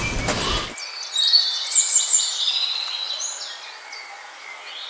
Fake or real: real